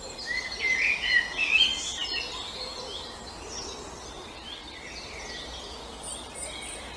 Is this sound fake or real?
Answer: real